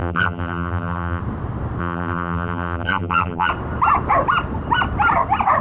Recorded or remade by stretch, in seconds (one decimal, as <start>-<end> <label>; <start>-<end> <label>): 0.0-1.2 remade; 1.2-1.8 recorded; 1.8-3.5 remade; 3.5-5.6 recorded